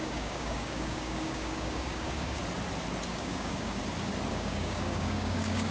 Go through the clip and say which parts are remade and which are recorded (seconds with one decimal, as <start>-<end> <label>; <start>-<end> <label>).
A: 0.0-2.4 remade; 2.4-3.2 recorded; 3.2-3.8 remade; 3.8-4.3 recorded; 4.3-5.7 remade